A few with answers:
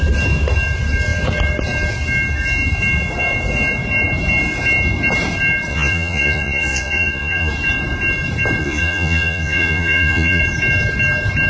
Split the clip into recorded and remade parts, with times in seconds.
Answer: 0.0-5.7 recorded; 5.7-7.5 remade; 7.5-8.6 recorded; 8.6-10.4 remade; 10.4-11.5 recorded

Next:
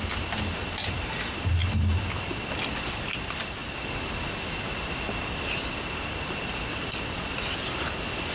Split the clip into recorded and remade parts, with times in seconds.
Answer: 0.0-8.3 recorded

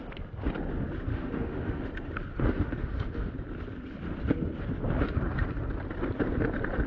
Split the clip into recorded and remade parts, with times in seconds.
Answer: 0.0-1.1 recorded; 1.1-1.8 remade; 1.8-2.3 recorded; 2.3-3.3 remade; 3.3-6.9 recorded